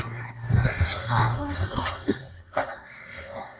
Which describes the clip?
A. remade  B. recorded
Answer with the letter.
A